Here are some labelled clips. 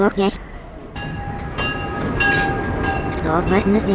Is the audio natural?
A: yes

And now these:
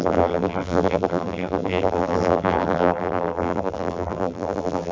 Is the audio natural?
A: no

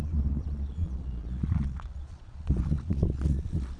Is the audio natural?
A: no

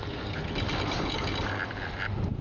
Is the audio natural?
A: yes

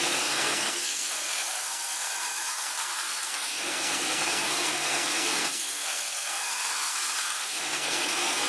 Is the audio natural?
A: no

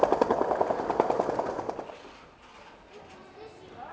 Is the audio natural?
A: yes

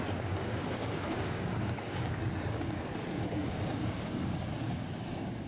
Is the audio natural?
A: no